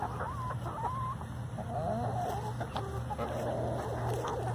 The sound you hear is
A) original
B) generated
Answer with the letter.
A